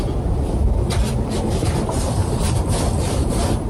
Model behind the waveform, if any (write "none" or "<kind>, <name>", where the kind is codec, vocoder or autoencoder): none